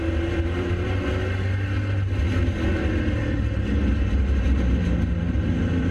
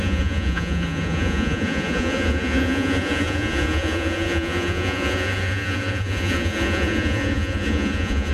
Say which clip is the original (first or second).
first